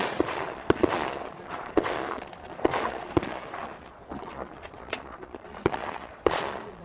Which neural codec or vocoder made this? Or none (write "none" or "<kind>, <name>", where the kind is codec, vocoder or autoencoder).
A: vocoder, Vocos